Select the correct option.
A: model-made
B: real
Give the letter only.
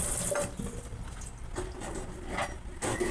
B